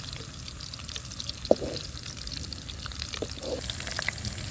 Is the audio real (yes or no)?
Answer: yes